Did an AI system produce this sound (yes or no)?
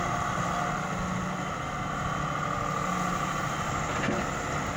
no